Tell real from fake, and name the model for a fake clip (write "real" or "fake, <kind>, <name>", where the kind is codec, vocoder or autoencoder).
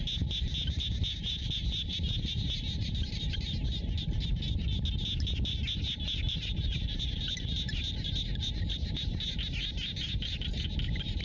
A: real